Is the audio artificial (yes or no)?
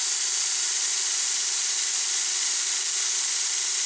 no